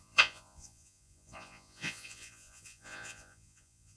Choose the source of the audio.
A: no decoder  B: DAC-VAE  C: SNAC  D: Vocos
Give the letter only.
D